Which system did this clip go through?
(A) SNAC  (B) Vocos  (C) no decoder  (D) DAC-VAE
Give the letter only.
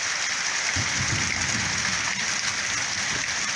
C